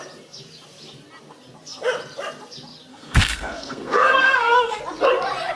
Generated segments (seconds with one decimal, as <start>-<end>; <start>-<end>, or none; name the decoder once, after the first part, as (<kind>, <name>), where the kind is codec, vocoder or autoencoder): 2.9-4.8 (codec, SNAC)